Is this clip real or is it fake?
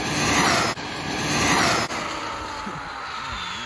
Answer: real